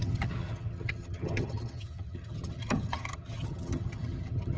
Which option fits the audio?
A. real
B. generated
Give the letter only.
B